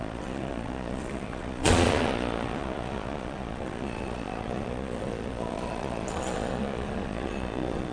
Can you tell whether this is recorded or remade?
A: remade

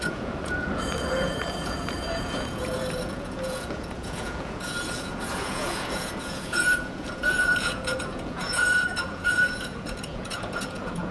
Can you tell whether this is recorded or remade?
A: remade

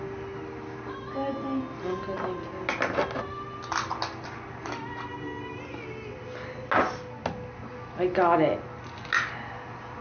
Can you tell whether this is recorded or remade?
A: recorded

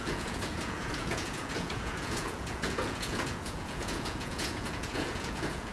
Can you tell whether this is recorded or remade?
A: remade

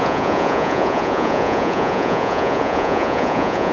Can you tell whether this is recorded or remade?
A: remade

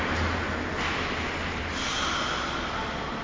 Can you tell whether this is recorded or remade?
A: recorded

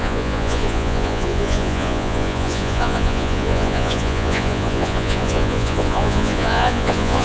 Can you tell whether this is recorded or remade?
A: remade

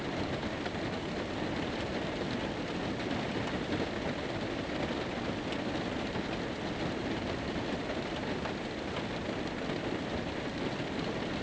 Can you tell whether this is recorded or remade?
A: recorded